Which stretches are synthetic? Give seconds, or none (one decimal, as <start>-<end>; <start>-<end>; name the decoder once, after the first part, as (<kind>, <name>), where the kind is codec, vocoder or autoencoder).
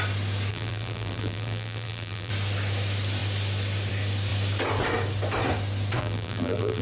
0.5-2.3 (vocoder, BigVGAN v2); 6.0-6.8